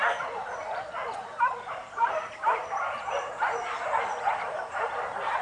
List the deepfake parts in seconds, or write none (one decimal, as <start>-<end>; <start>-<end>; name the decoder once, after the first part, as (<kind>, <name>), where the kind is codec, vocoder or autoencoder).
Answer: 0.0-1.0 (vocoder, BigVGAN v2); 1.7-5.4